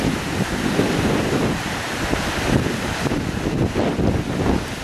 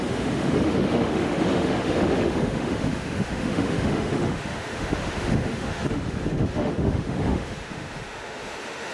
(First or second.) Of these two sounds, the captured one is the first